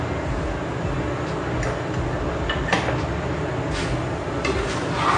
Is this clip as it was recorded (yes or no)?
yes